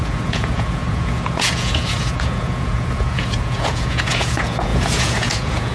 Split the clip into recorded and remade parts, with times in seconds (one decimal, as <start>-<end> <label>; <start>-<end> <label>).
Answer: 0.0-5.7 remade